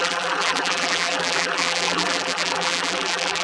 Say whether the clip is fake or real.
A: fake